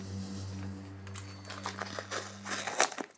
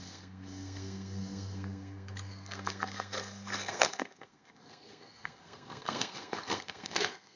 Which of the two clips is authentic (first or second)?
first